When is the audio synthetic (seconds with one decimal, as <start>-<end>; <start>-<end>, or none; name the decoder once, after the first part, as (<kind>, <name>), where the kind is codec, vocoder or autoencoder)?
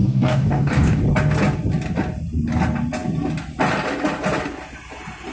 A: 0.0-1.0 (codec, DAC)